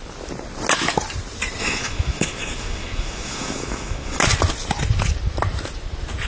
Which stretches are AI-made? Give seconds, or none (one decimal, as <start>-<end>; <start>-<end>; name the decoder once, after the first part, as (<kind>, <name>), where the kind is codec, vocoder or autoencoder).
1.6-4.2 (autoencoder, DAC-VAE)